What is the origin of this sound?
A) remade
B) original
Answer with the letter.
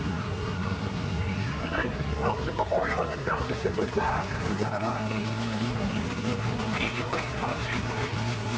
A